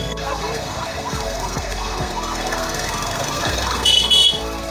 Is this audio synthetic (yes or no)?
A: yes